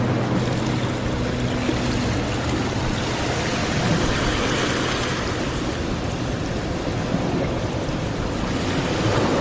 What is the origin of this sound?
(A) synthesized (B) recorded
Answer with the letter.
B